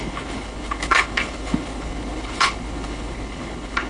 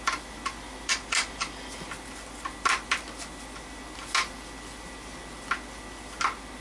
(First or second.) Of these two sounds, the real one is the second